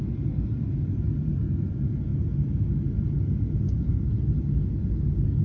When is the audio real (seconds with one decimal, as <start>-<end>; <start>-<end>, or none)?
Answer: 0.0-5.4